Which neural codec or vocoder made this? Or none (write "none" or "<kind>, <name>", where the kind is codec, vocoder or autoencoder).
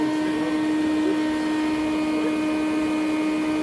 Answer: none